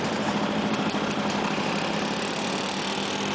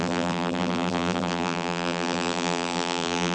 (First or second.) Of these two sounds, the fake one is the second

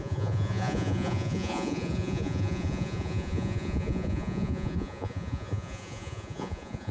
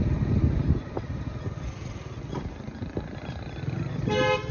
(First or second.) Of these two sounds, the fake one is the first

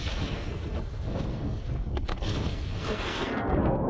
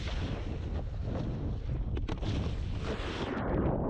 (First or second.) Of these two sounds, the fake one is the first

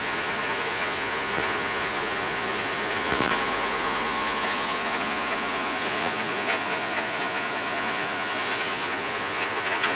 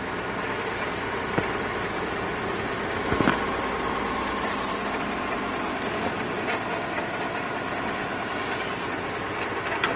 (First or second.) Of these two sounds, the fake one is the first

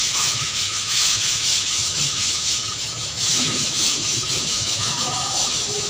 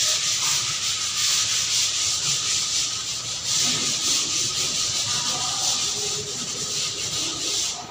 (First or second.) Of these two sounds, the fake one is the first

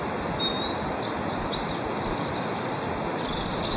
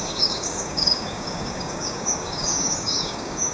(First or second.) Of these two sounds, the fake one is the second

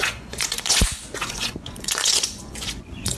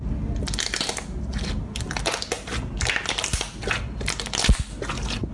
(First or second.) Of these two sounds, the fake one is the first